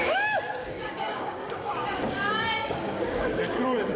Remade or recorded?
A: remade